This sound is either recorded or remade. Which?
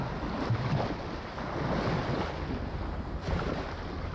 recorded